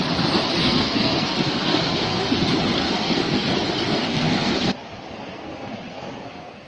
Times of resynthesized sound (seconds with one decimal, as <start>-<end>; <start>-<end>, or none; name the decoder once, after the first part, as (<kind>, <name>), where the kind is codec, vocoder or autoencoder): 0.6-2.3 (codec, SNAC); 2.8-3.5; 3.9-6.7